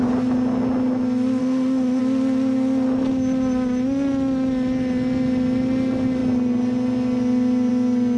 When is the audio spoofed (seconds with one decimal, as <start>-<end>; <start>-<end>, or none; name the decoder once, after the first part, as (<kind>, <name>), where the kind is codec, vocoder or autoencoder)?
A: 1.4-2.0 (autoencoder, DAC-VAE)